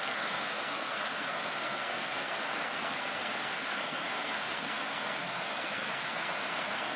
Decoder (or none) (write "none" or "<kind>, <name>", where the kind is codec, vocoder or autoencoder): codec, SNAC